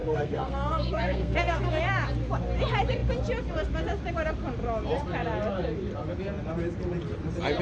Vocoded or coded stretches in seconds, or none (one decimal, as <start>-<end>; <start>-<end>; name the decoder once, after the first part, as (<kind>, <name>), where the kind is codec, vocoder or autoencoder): 0.0-1.8 (codec, SNAC)